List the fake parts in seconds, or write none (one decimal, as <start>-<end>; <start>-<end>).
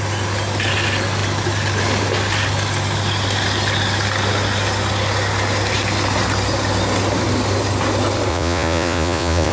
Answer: 8.3-9.5